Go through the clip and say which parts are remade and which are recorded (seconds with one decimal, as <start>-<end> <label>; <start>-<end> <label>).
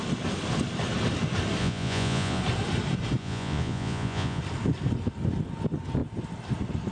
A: 0.0-1.6 recorded; 1.6-2.4 remade; 2.4-3.2 recorded; 3.2-4.4 remade; 4.4-6.9 recorded